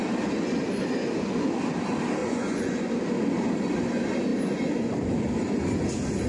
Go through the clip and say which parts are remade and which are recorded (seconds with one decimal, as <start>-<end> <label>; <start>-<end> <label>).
0.0-2.2 recorded; 2.2-2.9 remade; 2.9-6.3 recorded